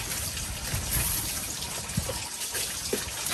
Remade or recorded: recorded